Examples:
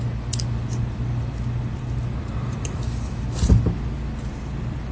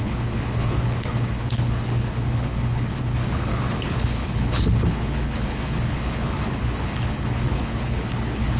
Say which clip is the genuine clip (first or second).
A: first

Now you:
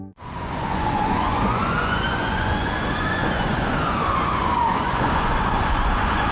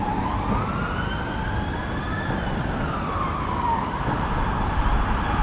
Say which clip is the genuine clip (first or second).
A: second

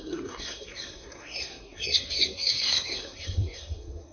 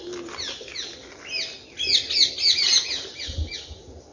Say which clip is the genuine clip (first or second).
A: second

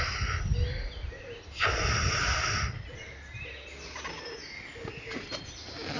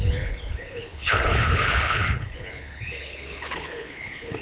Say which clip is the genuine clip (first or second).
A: first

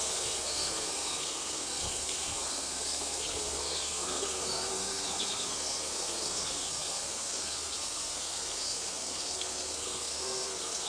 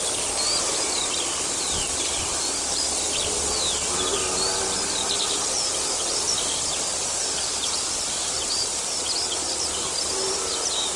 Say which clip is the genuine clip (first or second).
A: second